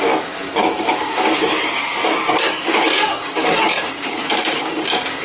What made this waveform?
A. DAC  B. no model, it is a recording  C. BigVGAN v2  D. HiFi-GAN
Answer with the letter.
A